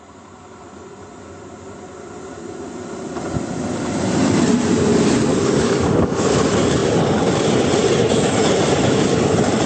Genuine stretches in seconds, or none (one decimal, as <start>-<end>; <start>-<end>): 0.0-5.3; 6.3-9.7